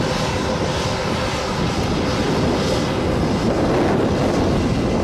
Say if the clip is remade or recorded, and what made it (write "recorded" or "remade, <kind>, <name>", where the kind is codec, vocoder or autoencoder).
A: recorded